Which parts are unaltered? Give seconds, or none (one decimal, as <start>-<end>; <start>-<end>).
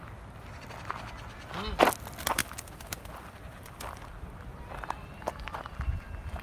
0.0-2.4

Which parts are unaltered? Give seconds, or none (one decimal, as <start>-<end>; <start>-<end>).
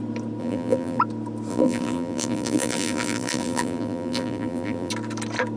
0.0-0.4; 1.0-1.5; 4.9-5.6